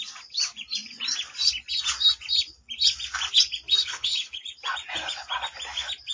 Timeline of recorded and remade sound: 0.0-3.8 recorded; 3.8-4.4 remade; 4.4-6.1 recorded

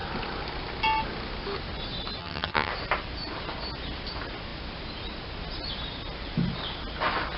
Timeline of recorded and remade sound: 0.0-2.2 recorded; 2.2-2.7 remade; 2.7-7.4 recorded